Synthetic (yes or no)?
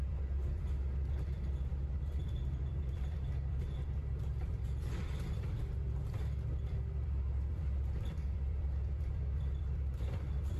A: yes